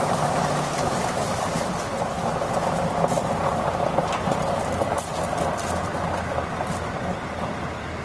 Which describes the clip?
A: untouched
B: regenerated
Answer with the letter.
A